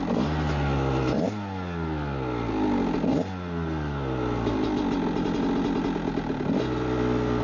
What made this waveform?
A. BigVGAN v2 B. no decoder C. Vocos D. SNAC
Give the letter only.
B